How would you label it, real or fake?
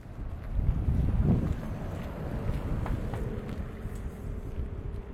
real